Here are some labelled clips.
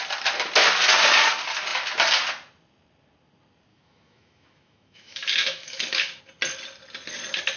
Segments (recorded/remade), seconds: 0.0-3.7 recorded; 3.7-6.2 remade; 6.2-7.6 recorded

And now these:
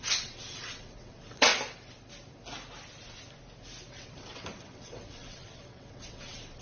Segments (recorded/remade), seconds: 0.0-1.5 remade; 1.5-3.9 recorded; 3.9-6.6 remade

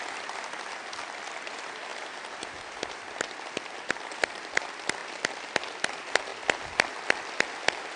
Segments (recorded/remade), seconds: 0.0-5.0 remade; 5.0-5.6 recorded; 5.6-6.3 remade; 6.3-7.6 recorded; 7.6-8.0 remade

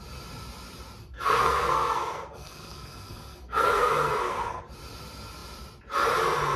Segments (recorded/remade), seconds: 0.0-1.0 recorded; 1.0-4.6 remade; 4.6-6.6 recorded

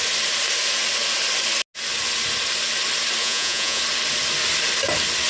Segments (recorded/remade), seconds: 0.0-3.2 recorded; 3.2-3.8 remade; 3.8-5.3 recorded

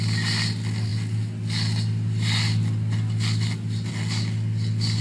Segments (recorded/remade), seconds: 0.0-5.0 recorded

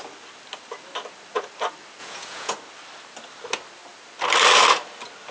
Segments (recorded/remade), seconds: 0.0-2.0 recorded; 2.0-2.5 remade; 2.5-5.3 recorded